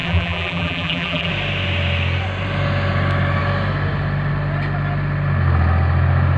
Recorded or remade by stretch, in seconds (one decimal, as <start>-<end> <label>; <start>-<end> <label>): 0.0-1.3 remade; 1.3-6.4 recorded